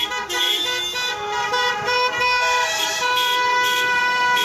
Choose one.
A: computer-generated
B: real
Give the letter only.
A